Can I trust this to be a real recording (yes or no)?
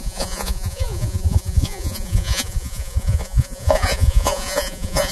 no